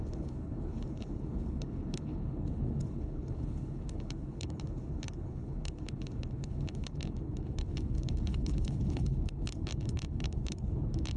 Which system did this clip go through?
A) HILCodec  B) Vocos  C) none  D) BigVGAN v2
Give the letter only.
A